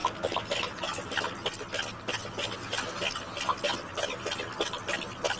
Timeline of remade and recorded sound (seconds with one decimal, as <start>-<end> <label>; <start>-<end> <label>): 0.0-0.8 remade; 0.8-5.4 recorded